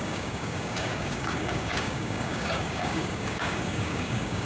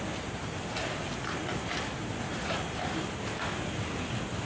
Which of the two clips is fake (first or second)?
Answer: first